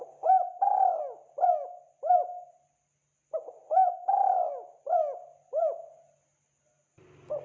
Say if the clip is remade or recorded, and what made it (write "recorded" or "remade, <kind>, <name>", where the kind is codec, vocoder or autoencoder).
recorded